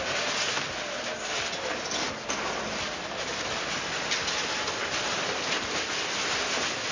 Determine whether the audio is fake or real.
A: real